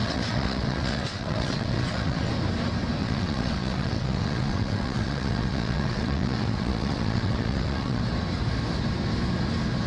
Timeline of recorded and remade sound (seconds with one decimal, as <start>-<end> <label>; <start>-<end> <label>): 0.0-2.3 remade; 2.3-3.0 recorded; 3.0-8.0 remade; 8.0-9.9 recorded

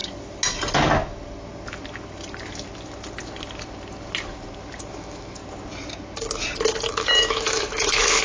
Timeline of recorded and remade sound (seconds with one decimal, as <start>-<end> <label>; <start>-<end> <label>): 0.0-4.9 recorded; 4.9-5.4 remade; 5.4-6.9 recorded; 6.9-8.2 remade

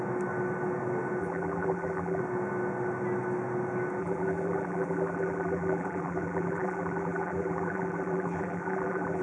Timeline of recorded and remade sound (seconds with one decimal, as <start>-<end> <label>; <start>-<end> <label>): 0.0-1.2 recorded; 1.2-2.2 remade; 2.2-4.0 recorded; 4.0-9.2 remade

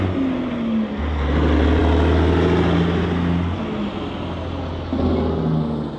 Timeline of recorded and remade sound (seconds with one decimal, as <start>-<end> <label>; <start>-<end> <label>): 0.0-6.0 recorded

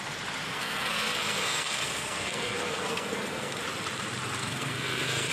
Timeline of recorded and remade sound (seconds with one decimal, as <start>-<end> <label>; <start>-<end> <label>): 0.0-0.5 recorded; 0.5-3.6 remade; 3.6-4.4 recorded; 4.4-5.3 remade

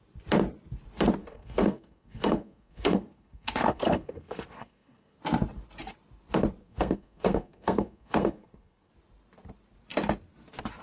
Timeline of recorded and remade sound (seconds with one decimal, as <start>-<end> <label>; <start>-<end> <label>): 0.0-1.2 recorded; 1.2-5.2 remade; 5.2-6.6 recorded; 6.6-8.9 remade; 8.9-10.8 recorded

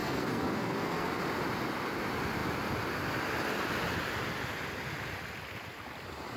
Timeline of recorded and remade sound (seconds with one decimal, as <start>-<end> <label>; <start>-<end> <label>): 0.0-1.1 remade; 1.1-6.4 recorded